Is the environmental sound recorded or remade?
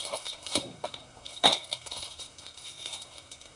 remade